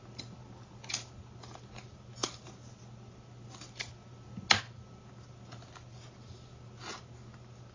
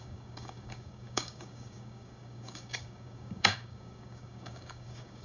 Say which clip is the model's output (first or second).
second